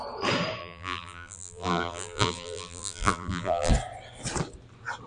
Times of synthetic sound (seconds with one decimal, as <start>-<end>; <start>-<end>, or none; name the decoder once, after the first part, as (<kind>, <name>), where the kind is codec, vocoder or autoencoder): 0.6-3.7 (vocoder, BigVGAN v2)